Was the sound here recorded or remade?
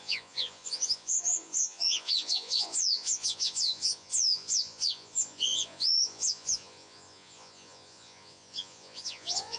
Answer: remade